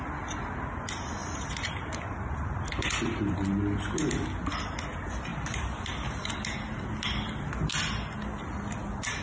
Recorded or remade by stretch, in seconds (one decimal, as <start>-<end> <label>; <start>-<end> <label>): 0.0-1.2 recorded; 1.2-2.7 remade; 2.7-5.3 recorded; 5.3-5.8 remade; 5.8-9.2 recorded